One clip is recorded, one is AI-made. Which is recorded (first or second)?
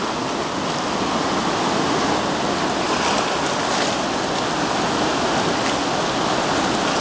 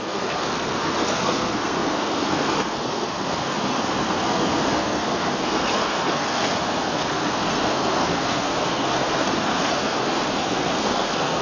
first